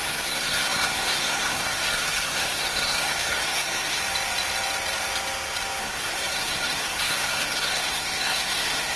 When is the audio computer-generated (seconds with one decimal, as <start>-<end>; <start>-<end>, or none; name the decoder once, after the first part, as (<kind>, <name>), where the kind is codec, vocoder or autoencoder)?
0.0-4.0 (codec, SNAC); 5.8-9.0